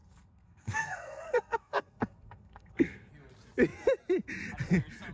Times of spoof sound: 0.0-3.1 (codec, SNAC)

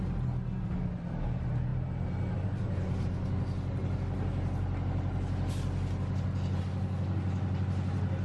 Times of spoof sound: none